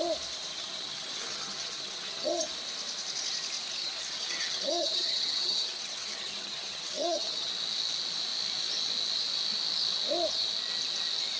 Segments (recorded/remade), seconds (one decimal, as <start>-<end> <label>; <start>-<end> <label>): 0.0-0.5 recorded; 0.5-2.5 remade; 2.5-3.8 recorded; 3.8-7.5 remade; 7.5-11.4 recorded

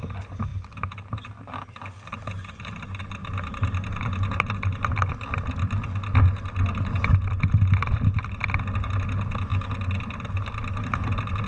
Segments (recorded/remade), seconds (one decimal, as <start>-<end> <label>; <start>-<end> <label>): 0.0-0.5 recorded; 0.5-5.1 remade; 5.1-11.5 recorded

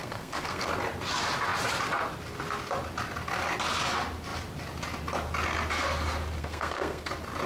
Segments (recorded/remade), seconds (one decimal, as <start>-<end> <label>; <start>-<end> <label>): 0.0-0.7 remade; 0.7-6.4 recorded; 6.4-7.1 remade; 7.1-7.5 recorded

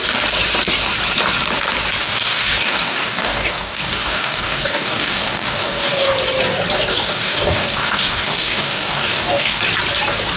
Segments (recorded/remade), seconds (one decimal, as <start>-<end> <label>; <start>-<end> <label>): 0.0-2.0 recorded; 2.0-6.1 remade; 6.1-6.9 recorded; 6.9-9.6 remade; 9.6-10.4 recorded

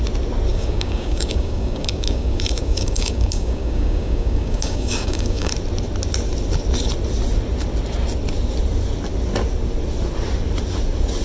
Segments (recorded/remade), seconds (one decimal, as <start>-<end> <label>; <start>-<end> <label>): 0.0-0.5 recorded; 0.5-5.5 remade; 5.5-11.2 recorded